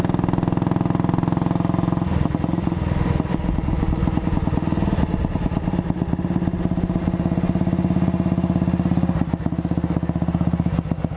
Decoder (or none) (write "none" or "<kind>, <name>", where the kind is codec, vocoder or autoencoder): none